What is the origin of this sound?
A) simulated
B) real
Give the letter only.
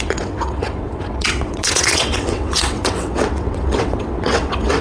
A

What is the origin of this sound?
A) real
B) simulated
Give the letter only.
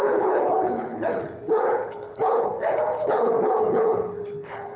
B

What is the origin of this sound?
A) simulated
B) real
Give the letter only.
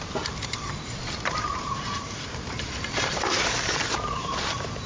A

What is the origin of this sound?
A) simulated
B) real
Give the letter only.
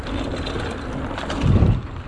B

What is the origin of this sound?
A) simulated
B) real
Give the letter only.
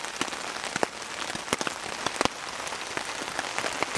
B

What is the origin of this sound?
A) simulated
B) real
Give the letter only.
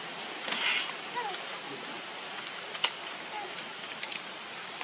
A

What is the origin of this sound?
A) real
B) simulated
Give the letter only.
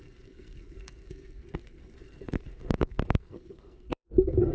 B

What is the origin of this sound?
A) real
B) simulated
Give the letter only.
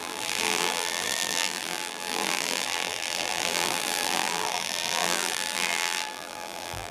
B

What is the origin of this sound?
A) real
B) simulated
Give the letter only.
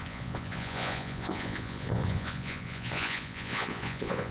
B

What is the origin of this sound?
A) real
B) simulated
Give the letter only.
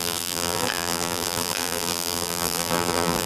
B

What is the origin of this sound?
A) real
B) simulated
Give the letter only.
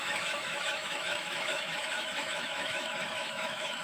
B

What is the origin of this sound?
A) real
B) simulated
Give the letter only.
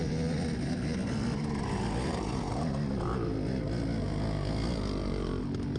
A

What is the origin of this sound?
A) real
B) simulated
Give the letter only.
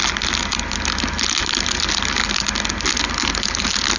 A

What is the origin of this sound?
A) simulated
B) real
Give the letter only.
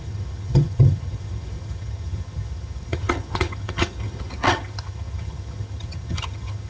A